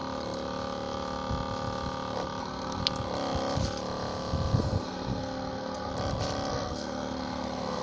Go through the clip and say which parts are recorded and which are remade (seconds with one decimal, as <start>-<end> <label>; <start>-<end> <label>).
0.0-2.4 recorded; 2.4-2.8 remade; 2.8-4.6 recorded; 4.6-5.9 remade; 5.9-6.5 recorded; 6.5-7.8 remade